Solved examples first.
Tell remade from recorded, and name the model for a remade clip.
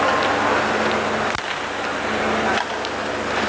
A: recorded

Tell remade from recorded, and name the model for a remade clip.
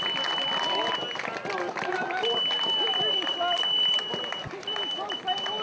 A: recorded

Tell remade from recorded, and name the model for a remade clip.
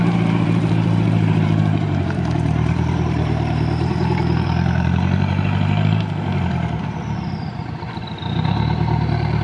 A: remade, vocoder, BigVGAN v2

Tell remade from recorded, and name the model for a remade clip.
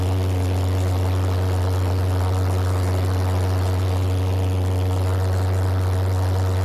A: recorded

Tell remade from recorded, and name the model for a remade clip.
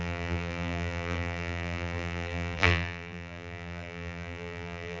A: remade, vocoder, BigVGAN v2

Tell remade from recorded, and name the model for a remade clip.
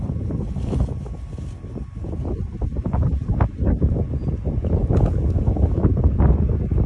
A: recorded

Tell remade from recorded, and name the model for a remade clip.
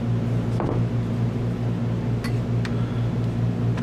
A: recorded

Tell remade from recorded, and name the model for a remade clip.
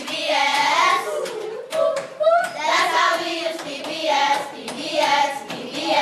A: remade, vocoder, BigVGAN v2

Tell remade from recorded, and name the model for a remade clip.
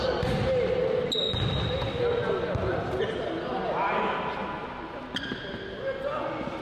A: recorded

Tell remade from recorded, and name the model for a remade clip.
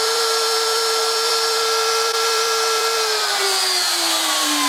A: remade, vocoder, BigVGAN v2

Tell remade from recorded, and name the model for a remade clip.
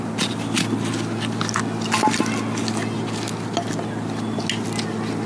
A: recorded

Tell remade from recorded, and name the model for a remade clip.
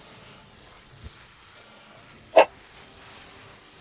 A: recorded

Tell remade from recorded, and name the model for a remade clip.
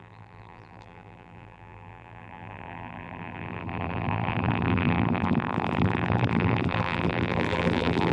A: remade, vocoder, BigVGAN v2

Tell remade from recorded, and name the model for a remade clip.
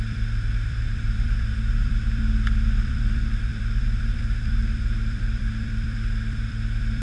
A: remade, vocoder, BigVGAN v2